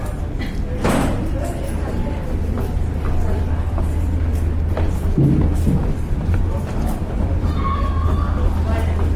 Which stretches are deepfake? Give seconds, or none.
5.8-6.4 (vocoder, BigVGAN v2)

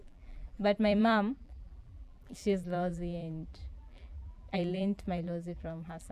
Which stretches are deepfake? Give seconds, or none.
0.0-6.1 (vocoder, BigVGAN v2)

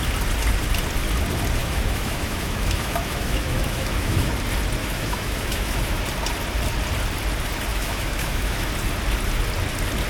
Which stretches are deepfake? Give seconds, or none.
1.6-4.3 (autoencoder, DAC-VAE); 4.8-6.0; 7.7-8.7

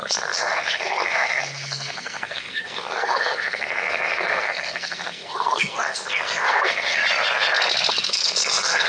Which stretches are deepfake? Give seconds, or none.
0.0-7.0 (codec, SNAC); 7.9-8.9

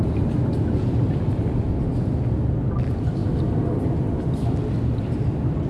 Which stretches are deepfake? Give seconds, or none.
none

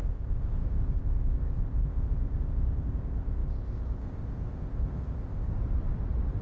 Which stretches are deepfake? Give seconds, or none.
0.0-5.5 (codec, ZipCodec)